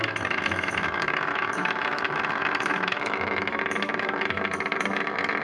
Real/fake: fake